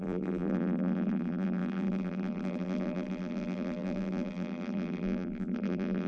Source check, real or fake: fake